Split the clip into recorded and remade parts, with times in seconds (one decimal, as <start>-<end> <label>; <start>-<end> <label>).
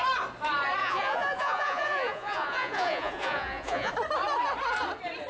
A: 0.0-0.8 recorded; 0.8-3.9 remade; 3.9-5.3 recorded